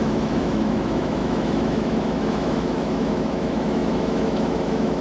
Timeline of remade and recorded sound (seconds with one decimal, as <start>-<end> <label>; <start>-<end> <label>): 0.0-5.0 remade